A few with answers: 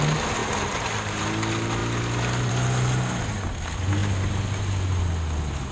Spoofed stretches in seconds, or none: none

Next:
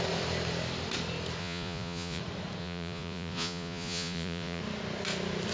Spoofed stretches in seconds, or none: 1.4-2.2 (vocoder, Vocos); 2.6-4.6

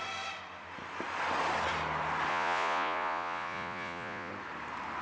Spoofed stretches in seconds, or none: 2.3-4.3 (vocoder, Vocos)

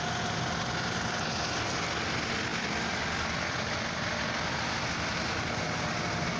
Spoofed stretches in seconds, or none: none

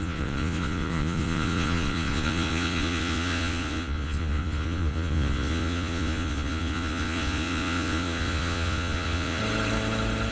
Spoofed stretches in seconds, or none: 0.0-9.4 (vocoder, Vocos)

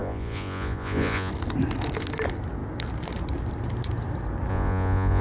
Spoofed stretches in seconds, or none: 0.0-1.3 (vocoder, Vocos); 4.5-5.2

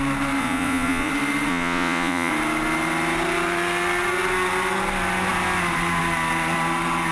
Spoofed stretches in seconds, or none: 0.4-1.1 (vocoder, Vocos); 1.5-2.3

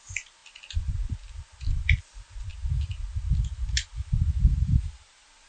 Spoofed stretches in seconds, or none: none